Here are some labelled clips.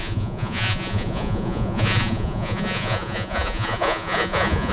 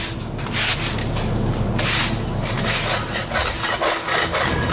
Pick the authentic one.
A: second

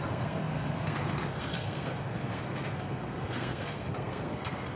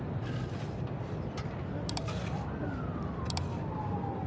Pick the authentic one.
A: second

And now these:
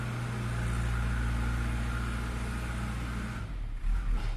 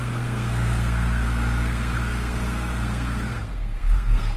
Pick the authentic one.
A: first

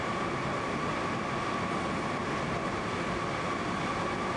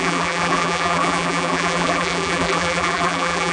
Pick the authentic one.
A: first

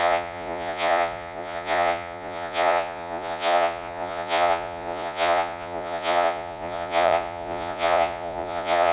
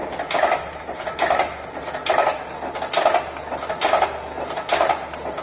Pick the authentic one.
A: second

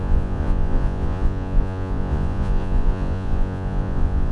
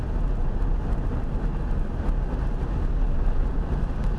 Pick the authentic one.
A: second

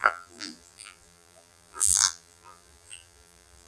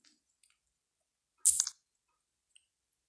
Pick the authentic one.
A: second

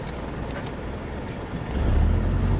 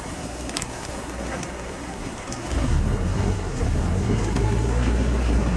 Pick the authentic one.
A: first